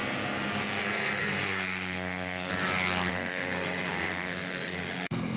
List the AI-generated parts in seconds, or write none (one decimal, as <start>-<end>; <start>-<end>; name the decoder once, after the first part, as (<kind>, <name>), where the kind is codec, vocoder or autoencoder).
0.8-2.5 (codec, SNAC); 3.1-5.4